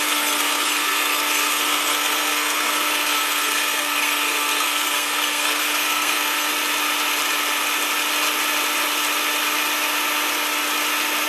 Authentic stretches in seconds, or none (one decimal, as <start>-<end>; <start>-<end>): 6.5-11.3